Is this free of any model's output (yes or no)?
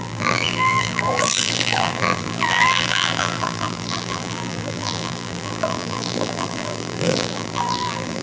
no